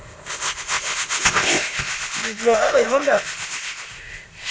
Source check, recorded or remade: remade